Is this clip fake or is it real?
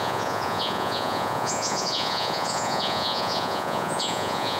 fake